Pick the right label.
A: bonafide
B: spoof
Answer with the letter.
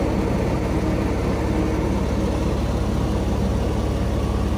A